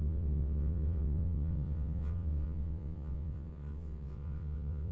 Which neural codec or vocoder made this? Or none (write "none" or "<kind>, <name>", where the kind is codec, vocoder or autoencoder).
vocoder, WaveNeXt